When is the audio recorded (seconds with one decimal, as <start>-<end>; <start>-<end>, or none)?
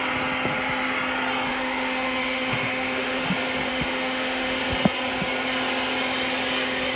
0.0-1.5; 3.3-3.7; 4.6-7.0